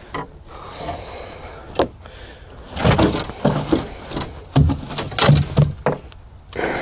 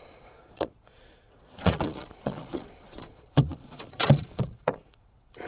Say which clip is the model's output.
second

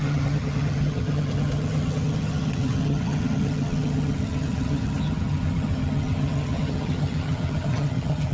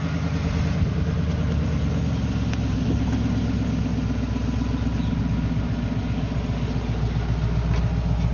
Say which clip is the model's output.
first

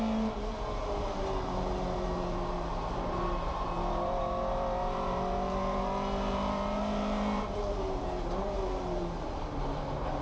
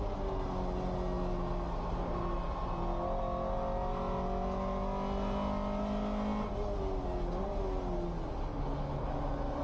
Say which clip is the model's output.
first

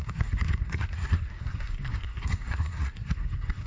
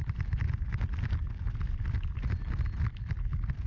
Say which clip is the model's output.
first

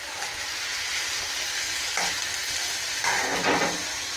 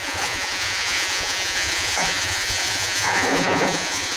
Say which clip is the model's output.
second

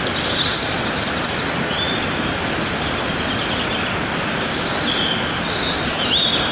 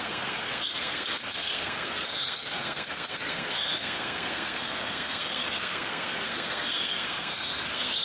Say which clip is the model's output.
second